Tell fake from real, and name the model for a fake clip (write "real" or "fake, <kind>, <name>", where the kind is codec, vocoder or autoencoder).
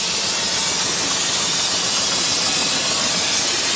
real